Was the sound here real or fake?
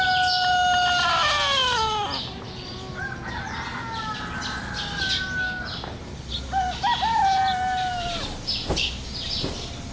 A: real